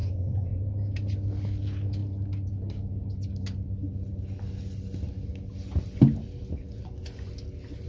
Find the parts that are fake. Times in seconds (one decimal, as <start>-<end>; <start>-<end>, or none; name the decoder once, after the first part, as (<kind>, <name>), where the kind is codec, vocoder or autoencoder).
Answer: 0.0-0.6 (vocoder, Vocos); 6.6-7.3